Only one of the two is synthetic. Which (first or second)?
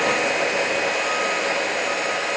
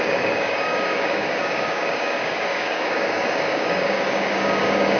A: second